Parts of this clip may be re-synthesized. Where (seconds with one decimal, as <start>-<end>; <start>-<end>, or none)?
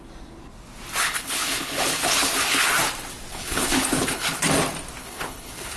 1.0-2.7; 3.3-4.4; 5.0-5.8